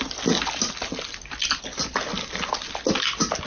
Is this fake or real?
real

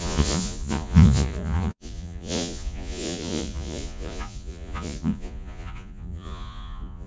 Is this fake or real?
fake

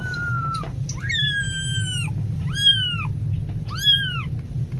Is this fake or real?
real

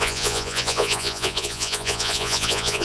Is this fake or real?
fake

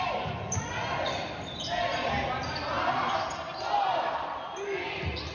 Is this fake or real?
real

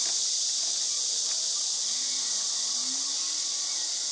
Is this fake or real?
real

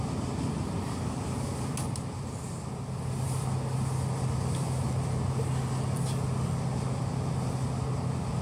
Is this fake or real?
real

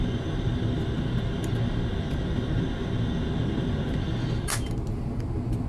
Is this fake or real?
real